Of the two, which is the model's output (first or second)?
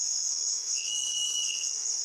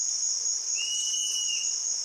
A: first